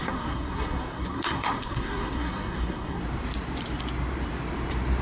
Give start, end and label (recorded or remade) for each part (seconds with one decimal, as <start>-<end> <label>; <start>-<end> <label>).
0.0-3.0 remade; 3.0-5.0 recorded